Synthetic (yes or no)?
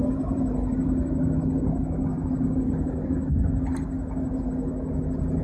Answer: no